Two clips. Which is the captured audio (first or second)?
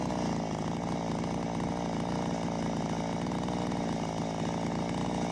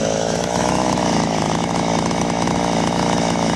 first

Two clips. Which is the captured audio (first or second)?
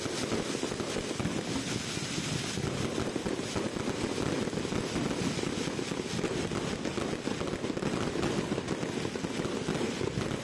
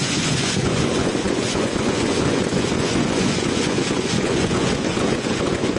first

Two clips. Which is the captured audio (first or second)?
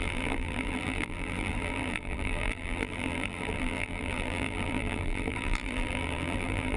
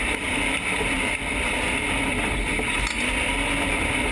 second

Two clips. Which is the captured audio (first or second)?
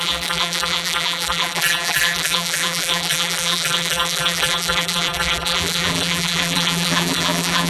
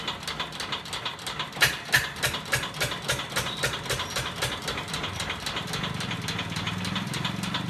second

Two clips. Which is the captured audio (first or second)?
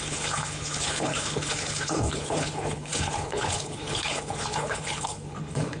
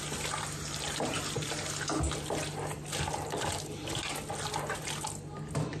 second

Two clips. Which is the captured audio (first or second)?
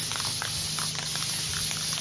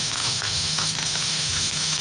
first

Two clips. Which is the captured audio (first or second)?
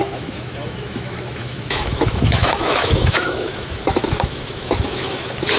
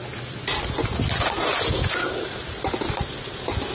second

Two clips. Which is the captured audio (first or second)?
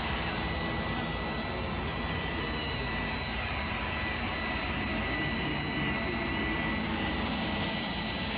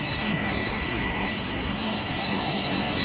first